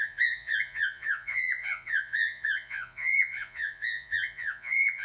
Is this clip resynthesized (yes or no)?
yes